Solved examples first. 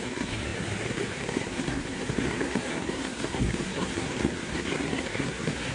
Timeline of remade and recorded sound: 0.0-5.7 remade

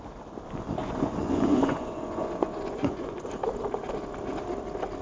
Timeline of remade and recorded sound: 0.0-0.8 recorded; 0.8-3.3 remade; 3.3-5.0 recorded